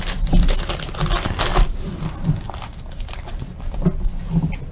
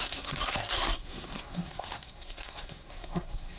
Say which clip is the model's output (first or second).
second